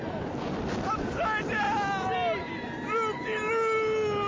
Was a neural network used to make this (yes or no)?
no